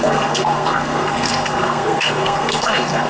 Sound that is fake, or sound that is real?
fake